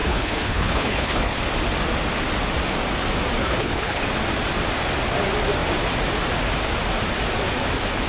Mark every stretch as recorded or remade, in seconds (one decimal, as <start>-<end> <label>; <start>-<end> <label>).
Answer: 0.0-1.4 remade; 1.4-3.4 recorded; 3.4-4.0 remade; 4.0-8.1 recorded